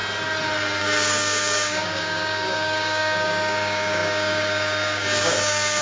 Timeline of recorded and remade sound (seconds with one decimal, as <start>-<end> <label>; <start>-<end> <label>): 0.0-0.8 recorded; 0.8-5.8 remade